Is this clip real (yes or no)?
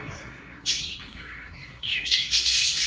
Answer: no